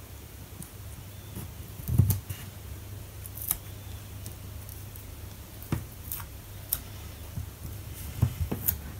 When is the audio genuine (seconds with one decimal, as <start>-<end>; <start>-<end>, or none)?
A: 0.0-9.0